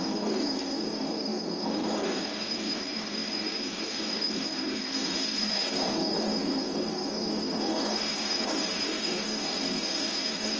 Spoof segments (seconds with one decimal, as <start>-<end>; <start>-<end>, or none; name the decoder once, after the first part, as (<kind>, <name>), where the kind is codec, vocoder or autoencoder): 0.0-10.6 (codec, DAC)